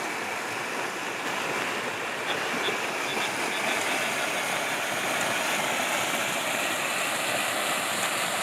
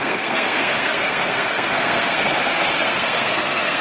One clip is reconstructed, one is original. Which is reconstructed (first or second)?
second